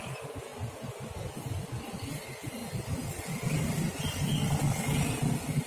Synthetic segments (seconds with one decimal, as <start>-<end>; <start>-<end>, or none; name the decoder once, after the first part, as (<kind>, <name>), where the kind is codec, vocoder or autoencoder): none